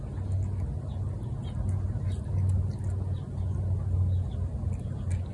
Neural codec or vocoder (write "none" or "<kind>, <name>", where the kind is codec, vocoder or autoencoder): none